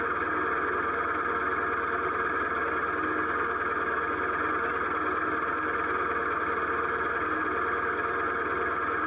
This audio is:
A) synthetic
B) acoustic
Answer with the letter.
B